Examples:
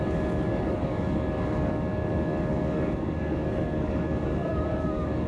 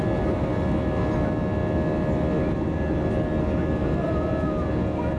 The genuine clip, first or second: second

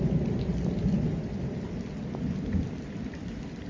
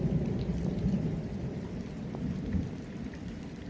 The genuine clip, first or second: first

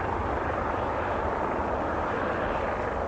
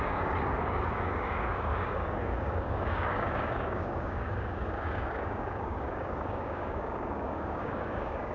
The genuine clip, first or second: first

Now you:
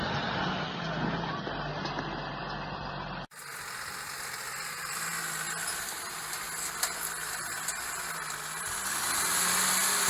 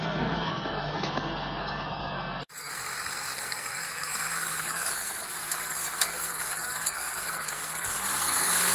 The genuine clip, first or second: first